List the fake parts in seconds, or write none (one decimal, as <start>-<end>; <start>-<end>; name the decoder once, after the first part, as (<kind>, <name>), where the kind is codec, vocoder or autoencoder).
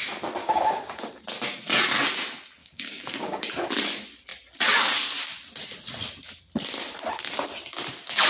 0.4-1.1 (codec, DAC); 2.6-3.5